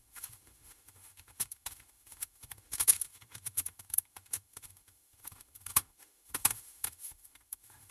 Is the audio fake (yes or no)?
yes